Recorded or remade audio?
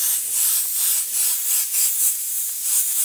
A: recorded